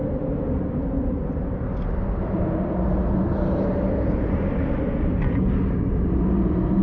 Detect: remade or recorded recorded